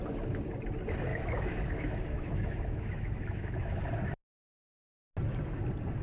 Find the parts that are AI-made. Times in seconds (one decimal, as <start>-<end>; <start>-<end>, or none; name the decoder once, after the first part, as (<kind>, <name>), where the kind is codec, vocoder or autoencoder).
1.1-3.8 (autoencoder, DAC-VAE)